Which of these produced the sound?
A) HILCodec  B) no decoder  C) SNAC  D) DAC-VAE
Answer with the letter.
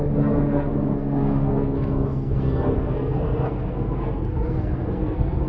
C